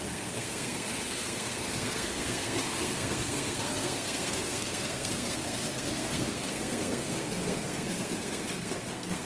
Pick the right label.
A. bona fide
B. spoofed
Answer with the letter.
B